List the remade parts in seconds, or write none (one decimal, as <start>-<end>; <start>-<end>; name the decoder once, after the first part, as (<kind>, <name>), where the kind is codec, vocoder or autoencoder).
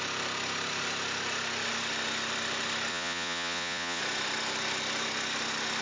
2.9-4.0 (vocoder, Vocos)